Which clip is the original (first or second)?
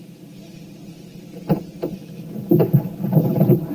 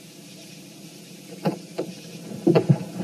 first